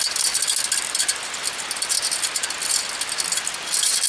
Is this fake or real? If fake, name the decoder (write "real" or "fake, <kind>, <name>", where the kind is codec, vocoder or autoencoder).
real